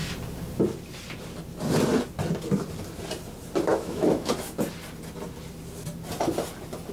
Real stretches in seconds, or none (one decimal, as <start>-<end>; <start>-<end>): 0.0-3.7; 4.3-6.9